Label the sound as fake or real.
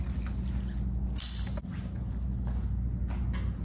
real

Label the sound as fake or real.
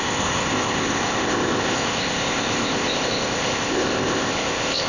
fake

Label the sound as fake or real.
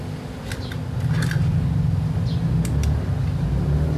real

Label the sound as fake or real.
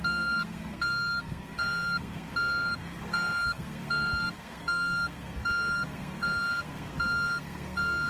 fake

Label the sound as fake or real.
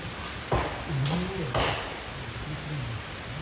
real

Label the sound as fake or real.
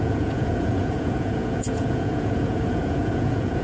fake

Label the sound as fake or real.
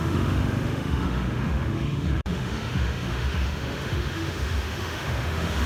fake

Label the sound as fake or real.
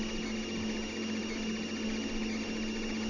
real